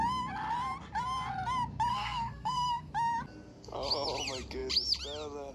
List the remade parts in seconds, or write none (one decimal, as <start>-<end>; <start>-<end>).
1.9-2.9